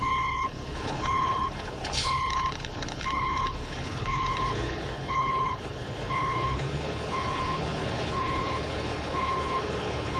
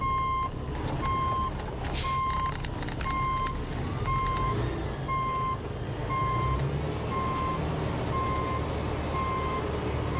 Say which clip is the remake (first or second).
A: first